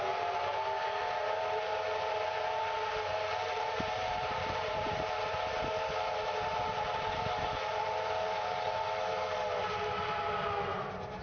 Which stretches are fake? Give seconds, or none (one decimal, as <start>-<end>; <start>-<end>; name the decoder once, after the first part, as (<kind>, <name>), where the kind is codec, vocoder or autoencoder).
3.4-5.1 (vocoder, BigVGAN v2)